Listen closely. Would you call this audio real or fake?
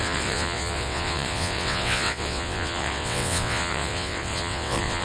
fake